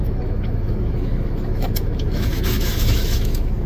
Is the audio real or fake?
fake